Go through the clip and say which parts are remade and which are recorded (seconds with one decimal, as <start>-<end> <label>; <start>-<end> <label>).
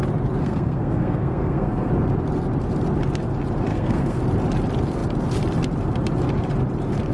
0.0-0.4 recorded; 0.4-1.9 remade; 1.9-3.7 recorded; 3.7-4.2 remade; 4.2-7.1 recorded